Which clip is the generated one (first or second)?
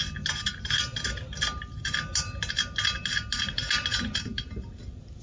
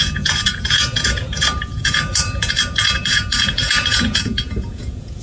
second